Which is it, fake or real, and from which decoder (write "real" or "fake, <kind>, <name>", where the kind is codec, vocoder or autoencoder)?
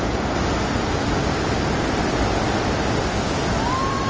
real